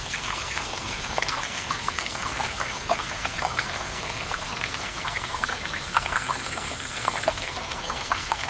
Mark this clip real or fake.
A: fake